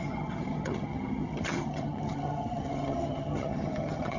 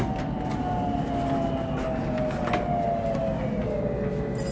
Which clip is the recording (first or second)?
second